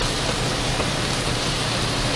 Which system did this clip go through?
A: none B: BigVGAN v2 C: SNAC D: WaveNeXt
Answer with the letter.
B